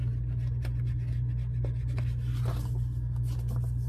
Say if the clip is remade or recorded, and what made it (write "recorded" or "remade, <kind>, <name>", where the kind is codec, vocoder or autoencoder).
recorded